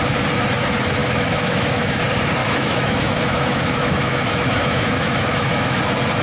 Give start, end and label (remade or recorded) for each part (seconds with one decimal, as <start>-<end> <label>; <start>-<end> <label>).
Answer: 0.0-1.0 recorded; 1.0-2.0 remade; 2.0-2.4 recorded; 2.4-5.8 remade; 5.8-6.2 recorded